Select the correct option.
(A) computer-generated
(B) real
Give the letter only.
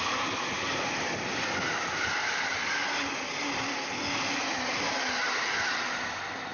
B